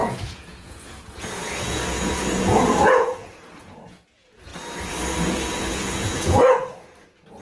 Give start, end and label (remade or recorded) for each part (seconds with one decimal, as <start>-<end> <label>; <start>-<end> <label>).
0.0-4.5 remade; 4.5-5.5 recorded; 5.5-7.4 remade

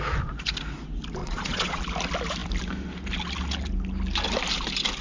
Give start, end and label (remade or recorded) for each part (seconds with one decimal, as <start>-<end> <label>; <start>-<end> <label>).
0.0-1.2 recorded; 1.2-1.8 remade; 1.8-5.0 recorded

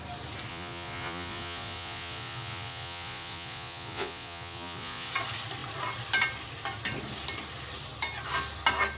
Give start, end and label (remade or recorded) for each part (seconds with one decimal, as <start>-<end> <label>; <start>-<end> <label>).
0.0-0.5 recorded; 0.5-5.1 remade; 5.1-9.0 recorded